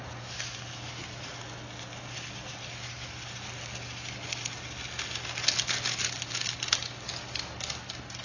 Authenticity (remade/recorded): recorded